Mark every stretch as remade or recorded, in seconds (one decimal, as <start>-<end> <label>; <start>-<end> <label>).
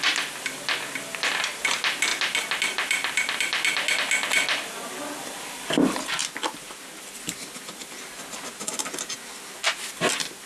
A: 0.0-10.5 recorded